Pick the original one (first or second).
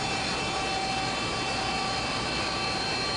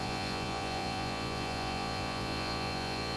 first